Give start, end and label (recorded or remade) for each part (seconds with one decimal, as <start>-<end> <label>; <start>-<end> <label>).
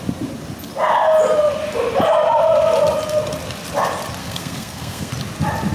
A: 0.0-4.2 recorded; 4.2-5.1 remade; 5.1-5.7 recorded